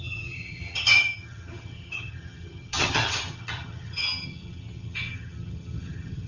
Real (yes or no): no